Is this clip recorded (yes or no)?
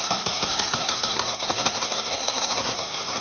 no